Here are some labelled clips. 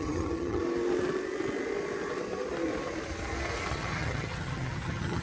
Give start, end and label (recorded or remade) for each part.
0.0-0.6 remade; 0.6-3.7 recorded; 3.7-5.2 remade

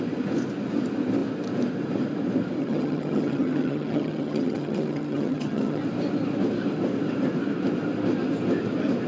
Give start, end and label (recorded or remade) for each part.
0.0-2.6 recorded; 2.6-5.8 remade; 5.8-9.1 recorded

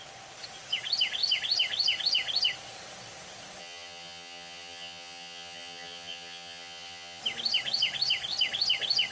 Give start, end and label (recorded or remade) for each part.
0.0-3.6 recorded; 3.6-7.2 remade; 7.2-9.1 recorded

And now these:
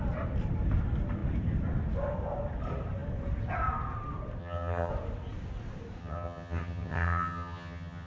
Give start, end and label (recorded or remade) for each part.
0.0-4.4 recorded; 4.4-4.9 remade; 4.9-6.0 recorded; 6.0-8.1 remade

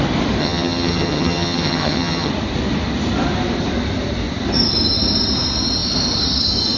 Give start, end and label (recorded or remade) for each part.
0.0-0.4 recorded; 0.4-2.3 remade; 2.3-6.8 recorded

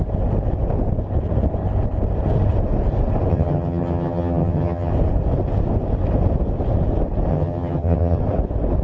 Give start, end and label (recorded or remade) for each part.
0.0-3.3 recorded; 3.3-4.9 remade; 4.9-7.3 recorded; 7.3-8.2 remade; 8.2-8.8 recorded

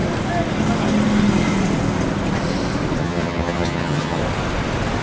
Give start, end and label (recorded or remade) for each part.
0.0-3.0 recorded; 3.0-4.2 remade; 4.2-5.0 recorded